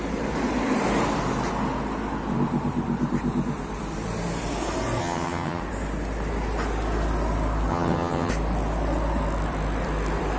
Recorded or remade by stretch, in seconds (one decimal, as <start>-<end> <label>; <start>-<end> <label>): 0.0-5.0 recorded; 5.0-5.6 remade; 5.6-7.7 recorded; 7.7-8.3 remade; 8.3-10.4 recorded